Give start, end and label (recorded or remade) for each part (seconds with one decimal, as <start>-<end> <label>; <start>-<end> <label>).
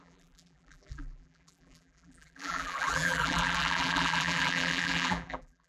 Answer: 0.0-5.7 remade